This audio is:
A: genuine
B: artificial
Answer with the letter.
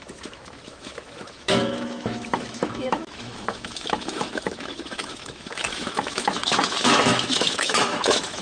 B